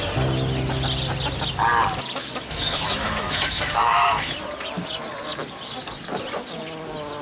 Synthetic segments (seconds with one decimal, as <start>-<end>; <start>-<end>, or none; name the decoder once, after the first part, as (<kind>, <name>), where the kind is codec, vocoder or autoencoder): 2.2-4.3 (autoencoder, DAC-VAE)